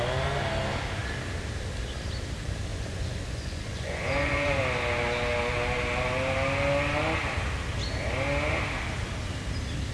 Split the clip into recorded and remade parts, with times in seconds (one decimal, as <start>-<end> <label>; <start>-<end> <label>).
0.0-2.7 recorded; 2.7-4.6 remade; 4.6-9.9 recorded